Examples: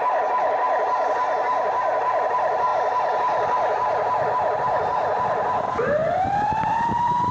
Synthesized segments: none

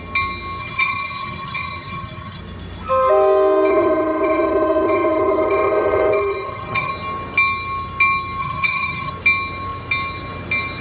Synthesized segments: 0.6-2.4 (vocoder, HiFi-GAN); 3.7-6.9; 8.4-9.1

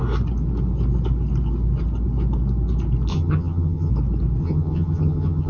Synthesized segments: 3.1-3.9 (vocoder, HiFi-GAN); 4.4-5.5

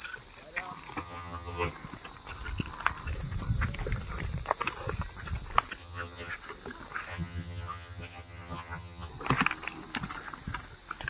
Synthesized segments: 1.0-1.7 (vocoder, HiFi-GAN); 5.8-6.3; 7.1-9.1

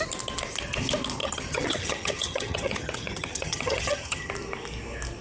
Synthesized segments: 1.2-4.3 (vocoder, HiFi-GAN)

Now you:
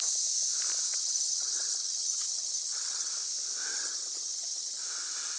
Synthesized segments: 0.9-3.1 (vocoder, HiFi-GAN); 3.7-4.8